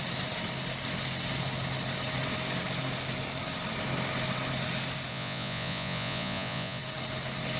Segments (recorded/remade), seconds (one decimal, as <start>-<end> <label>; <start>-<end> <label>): 0.0-5.1 recorded; 5.1-6.8 remade; 6.8-7.6 recorded